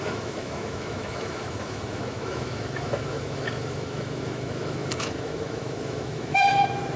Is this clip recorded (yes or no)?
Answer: no